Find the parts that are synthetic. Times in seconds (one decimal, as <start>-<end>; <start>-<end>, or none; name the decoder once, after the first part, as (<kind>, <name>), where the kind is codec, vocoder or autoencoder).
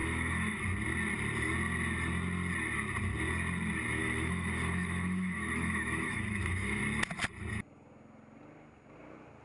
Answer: 0.0-0.6 (autoencoder, DAC-VAE); 4.0-6.8